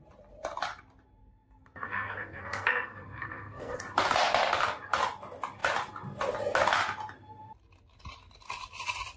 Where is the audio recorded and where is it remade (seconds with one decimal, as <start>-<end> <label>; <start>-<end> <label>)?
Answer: 0.0-1.2 recorded; 1.2-3.8 remade; 3.8-9.2 recorded